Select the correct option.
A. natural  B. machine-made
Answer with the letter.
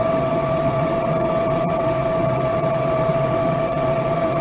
B